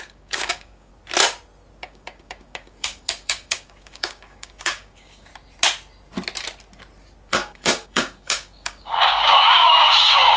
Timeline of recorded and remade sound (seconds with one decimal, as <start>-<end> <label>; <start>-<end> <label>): 0.0-0.9 remade; 0.9-1.8 recorded; 1.8-5.3 remade; 5.3-7.3 recorded; 7.3-10.4 remade